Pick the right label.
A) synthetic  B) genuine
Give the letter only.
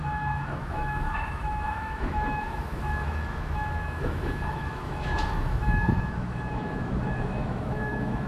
A